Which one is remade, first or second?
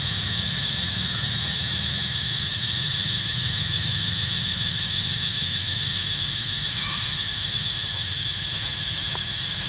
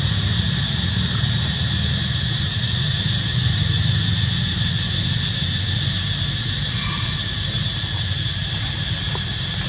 first